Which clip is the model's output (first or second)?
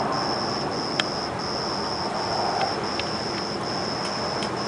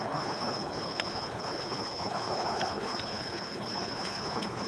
second